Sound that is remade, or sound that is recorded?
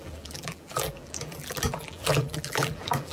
remade